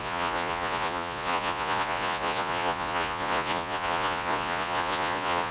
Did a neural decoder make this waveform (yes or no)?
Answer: yes